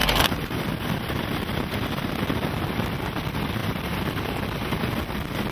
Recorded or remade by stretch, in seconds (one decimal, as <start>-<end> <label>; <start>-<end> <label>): 0.0-0.6 remade; 0.6-3.6 recorded; 3.6-4.4 remade; 4.4-5.5 recorded